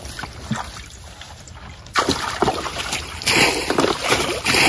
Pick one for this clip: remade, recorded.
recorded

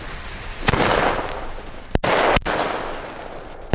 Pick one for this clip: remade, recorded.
recorded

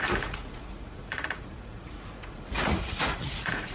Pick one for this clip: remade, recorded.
remade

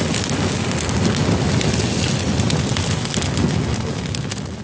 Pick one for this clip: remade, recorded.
recorded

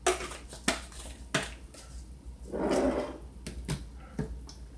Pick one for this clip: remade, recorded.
recorded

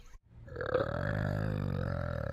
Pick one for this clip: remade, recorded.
recorded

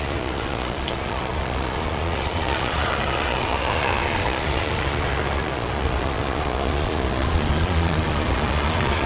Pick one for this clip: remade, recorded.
remade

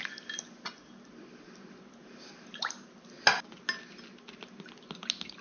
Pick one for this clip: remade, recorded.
recorded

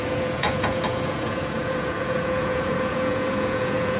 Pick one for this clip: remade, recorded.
remade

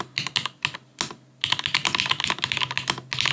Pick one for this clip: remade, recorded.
recorded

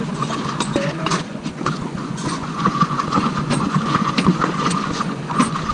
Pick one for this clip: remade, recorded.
remade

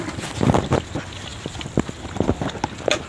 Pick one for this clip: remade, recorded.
recorded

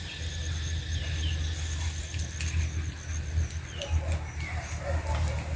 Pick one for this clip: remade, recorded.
recorded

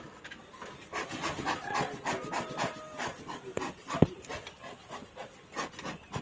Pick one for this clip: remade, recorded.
recorded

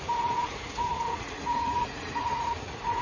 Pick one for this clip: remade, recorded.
remade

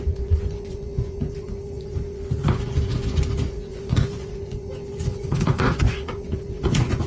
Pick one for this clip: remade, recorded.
remade